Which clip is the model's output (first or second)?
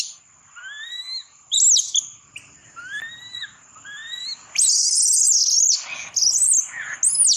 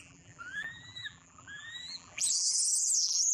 second